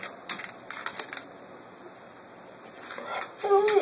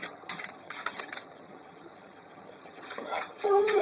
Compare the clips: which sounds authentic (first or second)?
first